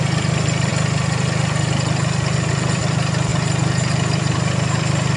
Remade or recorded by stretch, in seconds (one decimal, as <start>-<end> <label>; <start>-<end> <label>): 0.0-5.2 remade